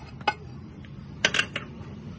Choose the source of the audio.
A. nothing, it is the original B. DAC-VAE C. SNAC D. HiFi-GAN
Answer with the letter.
A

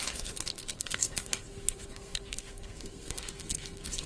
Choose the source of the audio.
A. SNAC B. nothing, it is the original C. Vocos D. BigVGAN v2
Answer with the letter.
A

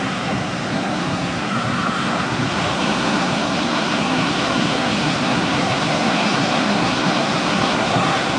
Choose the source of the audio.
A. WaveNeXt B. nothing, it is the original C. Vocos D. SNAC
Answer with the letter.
D